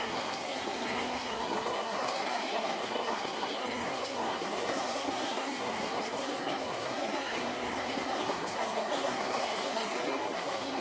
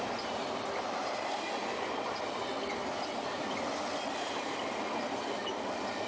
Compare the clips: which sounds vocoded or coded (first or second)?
first